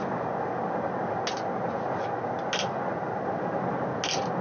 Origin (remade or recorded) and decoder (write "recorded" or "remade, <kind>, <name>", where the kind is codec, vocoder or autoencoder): recorded